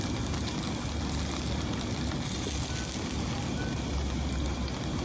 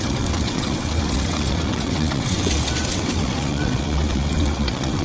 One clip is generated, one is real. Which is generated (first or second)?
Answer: second